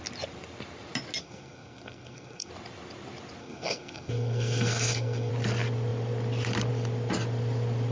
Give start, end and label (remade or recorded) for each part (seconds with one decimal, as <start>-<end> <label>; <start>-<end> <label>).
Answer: 0.0-1.2 recorded; 1.2-2.5 remade; 2.5-3.4 recorded; 3.4-5.3 remade; 5.3-7.9 recorded